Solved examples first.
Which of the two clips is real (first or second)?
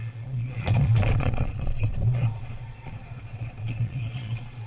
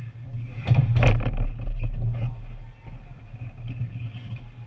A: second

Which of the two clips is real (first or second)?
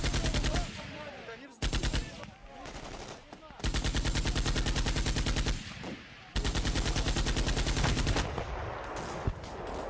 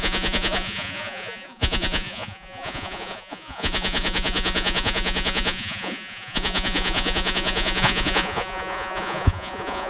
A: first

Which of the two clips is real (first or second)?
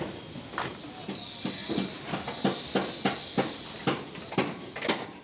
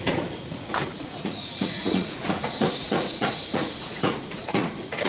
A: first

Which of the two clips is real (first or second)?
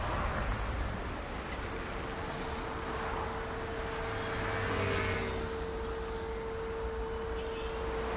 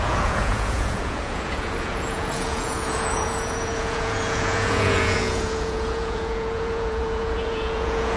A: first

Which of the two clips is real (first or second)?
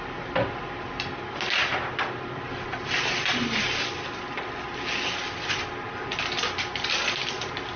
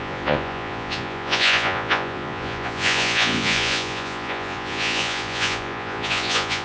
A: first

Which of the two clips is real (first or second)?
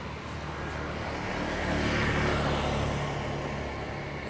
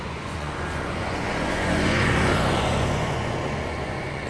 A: first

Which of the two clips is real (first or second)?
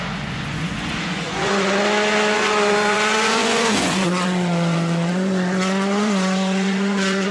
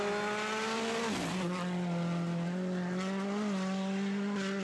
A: second